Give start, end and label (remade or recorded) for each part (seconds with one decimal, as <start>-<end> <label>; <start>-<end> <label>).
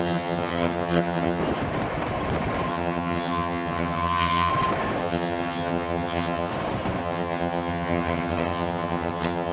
0.0-1.4 remade; 1.4-2.7 recorded; 2.7-4.5 remade; 4.5-5.0 recorded; 5.0-6.5 remade; 6.5-7.0 recorded; 7.0-9.5 remade